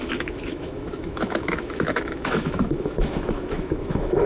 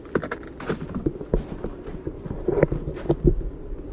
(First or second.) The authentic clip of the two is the second